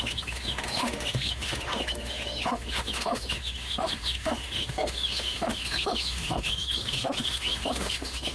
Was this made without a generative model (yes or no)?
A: no